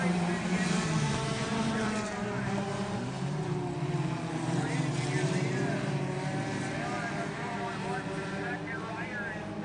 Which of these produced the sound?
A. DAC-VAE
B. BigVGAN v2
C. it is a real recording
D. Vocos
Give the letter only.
B